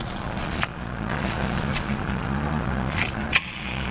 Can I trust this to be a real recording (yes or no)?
no